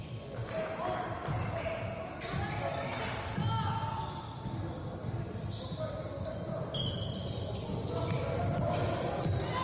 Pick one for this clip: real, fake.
real